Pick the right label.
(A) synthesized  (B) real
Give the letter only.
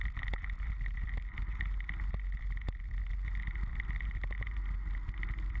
B